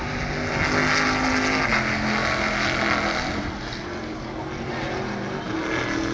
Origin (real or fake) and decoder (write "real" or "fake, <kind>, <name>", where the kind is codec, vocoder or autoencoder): real